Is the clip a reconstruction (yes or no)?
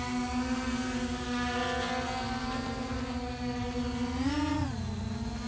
no